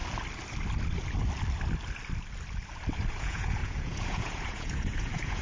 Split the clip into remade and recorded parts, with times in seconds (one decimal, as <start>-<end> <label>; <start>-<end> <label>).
0.0-3.2 recorded; 3.2-5.4 remade